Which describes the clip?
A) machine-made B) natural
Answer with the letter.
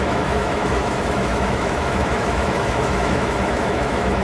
A